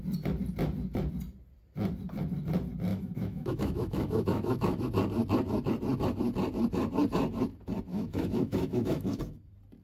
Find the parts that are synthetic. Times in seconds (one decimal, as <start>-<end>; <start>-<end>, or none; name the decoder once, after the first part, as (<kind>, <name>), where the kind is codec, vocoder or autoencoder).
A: 2.9-4.8 (autoencoder, DAC-VAE); 7.9-9.2